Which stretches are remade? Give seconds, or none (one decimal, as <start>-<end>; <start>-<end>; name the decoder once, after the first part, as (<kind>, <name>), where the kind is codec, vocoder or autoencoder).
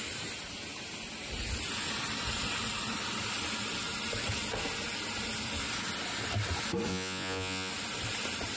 6.9-7.7 (vocoder, Vocos)